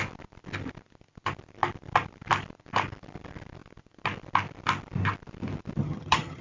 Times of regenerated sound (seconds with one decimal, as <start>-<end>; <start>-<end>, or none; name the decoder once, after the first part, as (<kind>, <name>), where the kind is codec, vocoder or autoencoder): 5.8-6.4 (vocoder, HiFi-GAN)